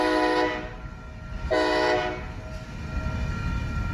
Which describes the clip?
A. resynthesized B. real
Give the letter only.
B